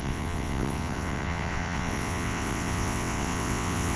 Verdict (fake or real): fake